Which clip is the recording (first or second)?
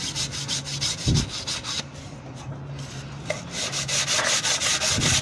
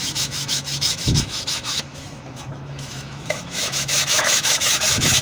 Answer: first